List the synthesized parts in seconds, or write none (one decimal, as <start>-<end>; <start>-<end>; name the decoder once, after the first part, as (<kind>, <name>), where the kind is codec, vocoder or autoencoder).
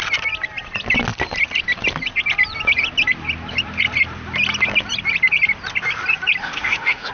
6.4-7.1 (autoencoder, DAC-VAE)